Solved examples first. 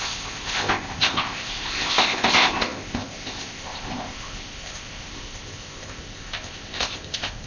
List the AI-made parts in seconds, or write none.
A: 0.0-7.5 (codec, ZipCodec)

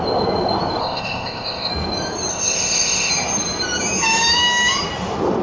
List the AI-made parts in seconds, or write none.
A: 0.8-1.7 (codec, ZipCodec); 2.3-3.1